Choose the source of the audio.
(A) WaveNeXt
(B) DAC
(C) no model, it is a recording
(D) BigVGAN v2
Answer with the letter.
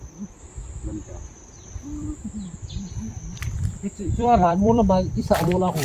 D